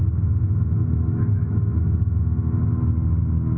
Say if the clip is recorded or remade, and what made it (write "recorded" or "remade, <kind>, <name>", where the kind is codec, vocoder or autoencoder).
recorded